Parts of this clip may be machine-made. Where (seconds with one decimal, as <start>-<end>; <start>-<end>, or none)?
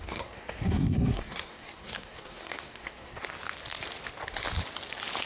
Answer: 0.0-3.2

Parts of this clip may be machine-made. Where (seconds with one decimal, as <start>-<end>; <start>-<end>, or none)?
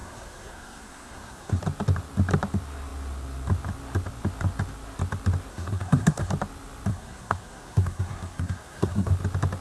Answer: 0.0-1.6; 5.5-6.3; 6.9-9.1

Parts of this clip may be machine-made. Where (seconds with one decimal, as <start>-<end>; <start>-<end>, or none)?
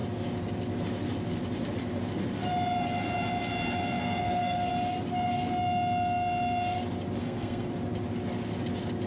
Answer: 4.0-4.7; 7.2-7.7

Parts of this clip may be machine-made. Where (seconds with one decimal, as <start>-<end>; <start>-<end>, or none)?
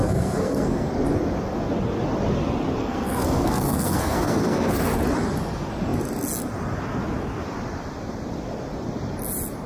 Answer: 0.0-0.9; 2.8-4.7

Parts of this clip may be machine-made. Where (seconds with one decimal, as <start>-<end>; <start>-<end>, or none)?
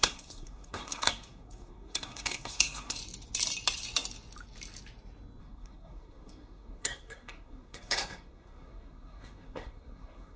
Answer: 0.0-3.0; 5.4-10.4